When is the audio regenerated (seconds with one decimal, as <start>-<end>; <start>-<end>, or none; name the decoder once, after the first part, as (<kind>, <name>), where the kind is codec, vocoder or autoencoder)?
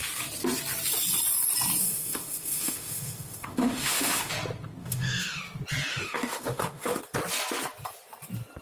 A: 1.8-4.3 (autoencoder, DAC-VAE); 4.8-5.4; 5.9-7.0